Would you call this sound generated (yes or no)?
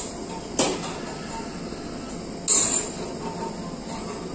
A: no